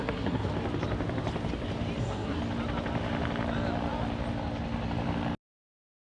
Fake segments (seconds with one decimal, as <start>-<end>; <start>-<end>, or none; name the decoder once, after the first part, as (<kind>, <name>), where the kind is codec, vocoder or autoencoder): 0.0-0.5 (codec, SNAC); 2.0-2.4